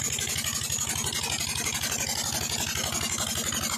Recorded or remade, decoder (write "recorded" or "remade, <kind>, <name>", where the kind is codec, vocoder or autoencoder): recorded